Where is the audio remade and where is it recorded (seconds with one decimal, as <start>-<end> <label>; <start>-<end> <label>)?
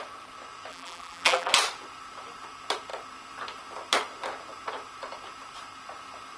0.0-0.7 recorded; 0.7-1.5 remade; 1.5-6.4 recorded